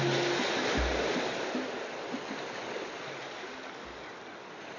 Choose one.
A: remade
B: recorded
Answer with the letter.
B